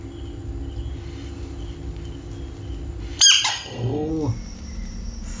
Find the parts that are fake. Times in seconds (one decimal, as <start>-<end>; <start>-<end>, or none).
3.5-4.1